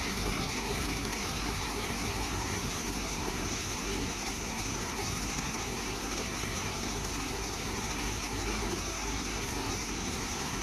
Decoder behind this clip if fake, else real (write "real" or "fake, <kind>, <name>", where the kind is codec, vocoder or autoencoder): fake, codec, SNAC